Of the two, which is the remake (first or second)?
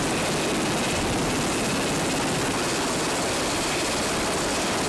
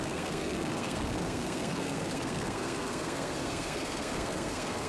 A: second